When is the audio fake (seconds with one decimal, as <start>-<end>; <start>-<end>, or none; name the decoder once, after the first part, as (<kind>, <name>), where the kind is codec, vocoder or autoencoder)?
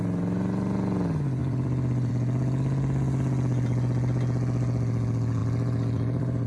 1.4-2.1 (vocoder, BigVGAN v2); 5.4-6.5